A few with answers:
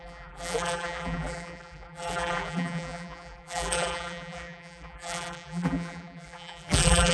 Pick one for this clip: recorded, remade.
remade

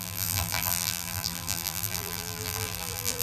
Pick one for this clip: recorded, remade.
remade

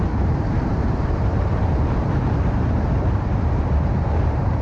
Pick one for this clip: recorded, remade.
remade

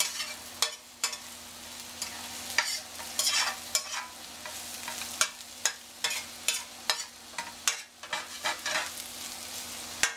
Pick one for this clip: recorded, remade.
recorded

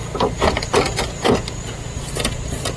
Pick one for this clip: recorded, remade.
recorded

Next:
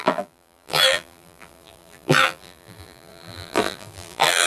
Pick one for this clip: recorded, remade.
remade